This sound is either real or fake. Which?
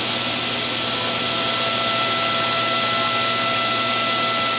real